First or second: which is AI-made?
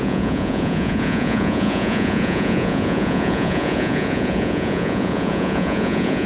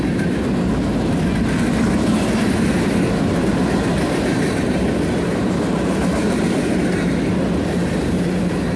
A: first